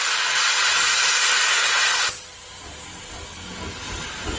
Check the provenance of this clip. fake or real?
real